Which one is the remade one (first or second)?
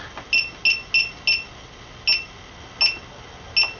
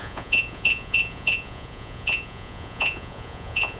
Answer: second